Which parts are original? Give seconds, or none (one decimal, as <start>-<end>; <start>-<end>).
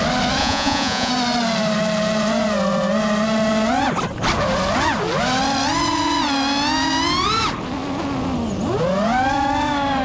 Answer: 0.0-0.4; 1.1-10.0